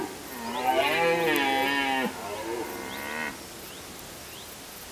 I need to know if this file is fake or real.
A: real